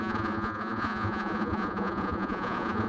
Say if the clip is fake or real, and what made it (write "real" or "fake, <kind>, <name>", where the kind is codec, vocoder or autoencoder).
fake, vocoder, Vocos